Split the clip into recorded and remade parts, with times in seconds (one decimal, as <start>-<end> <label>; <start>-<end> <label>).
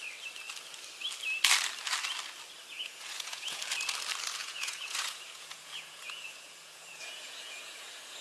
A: 0.0-2.7 recorded; 2.7-3.6 remade; 3.6-4.4 recorded; 4.4-8.2 remade